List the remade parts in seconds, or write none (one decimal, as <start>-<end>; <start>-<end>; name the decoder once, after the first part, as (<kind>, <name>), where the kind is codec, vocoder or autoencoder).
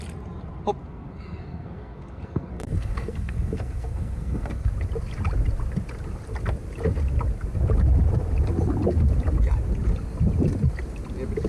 0.8-4.7 (codec, SNAC)